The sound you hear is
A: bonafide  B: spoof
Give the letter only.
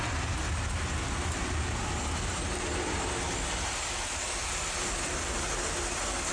A